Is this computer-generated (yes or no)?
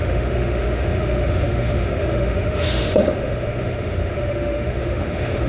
yes